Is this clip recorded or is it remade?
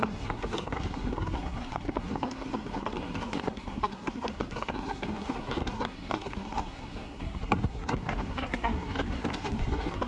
remade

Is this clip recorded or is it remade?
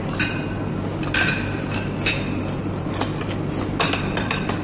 recorded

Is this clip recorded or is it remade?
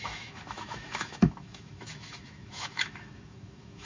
remade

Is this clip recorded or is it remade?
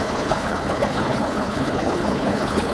remade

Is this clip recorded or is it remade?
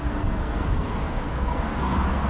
remade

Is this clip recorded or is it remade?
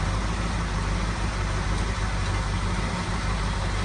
recorded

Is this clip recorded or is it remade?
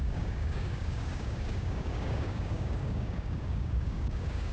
remade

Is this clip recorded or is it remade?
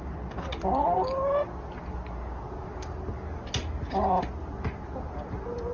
recorded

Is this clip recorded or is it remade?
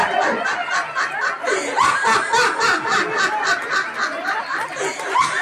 recorded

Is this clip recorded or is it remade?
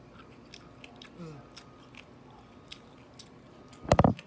recorded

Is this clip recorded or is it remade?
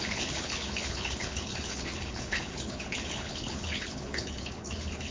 remade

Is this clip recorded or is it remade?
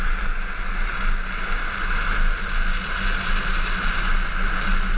recorded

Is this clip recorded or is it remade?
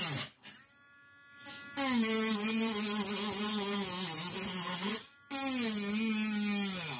recorded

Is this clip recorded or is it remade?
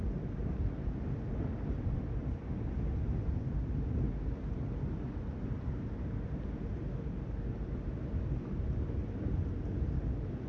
recorded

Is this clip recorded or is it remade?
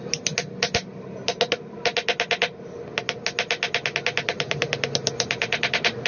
recorded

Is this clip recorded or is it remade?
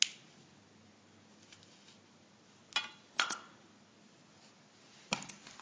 recorded